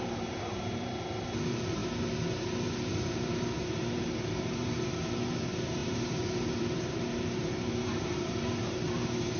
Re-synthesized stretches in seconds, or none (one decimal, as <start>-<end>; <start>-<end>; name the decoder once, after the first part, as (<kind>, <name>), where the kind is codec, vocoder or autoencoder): 0.0-9.4 (vocoder, BigVGAN v2)